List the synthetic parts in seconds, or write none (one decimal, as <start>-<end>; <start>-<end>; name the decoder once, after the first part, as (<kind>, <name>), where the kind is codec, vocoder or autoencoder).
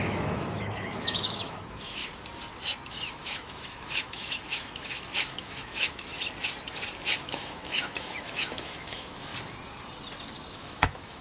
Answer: 0.0-2.0 (autoencoder, DAC-VAE); 2.9-6.1; 7.2-9.3; 10.5-11.2